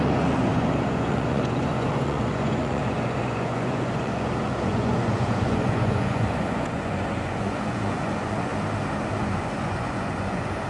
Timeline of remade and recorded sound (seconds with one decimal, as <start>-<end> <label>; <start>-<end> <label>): 0.0-8.5 remade; 8.5-9.2 recorded; 9.2-10.7 remade

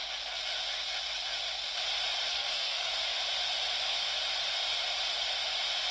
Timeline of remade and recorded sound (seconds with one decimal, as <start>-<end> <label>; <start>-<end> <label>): 0.0-2.3 recorded; 2.3-2.9 remade; 2.9-5.9 recorded

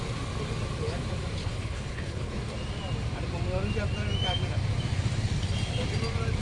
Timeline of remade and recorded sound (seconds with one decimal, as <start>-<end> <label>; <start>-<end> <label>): 0.0-1.4 recorded; 1.4-2.4 remade; 2.4-6.4 recorded

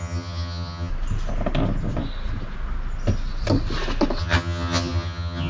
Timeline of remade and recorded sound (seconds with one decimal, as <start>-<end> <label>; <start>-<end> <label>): 0.0-0.9 remade; 0.9-4.2 recorded; 4.2-5.5 remade